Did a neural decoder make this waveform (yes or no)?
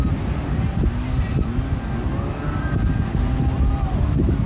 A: no